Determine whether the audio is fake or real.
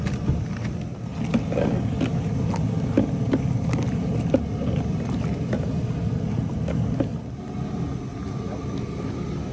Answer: real